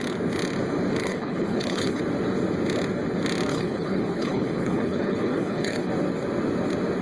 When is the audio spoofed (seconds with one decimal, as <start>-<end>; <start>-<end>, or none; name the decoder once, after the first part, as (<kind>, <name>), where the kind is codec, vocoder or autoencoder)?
1.0-2.0 (codec, HILCodec); 3.5-5.9